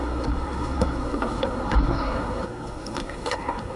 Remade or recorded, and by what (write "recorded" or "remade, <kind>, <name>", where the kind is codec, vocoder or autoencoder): remade, codec, SNAC